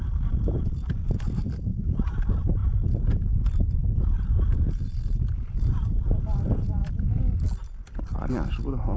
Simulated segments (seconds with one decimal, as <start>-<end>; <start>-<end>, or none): 0.0-2.6; 4.2-6.8; 8.3-9.0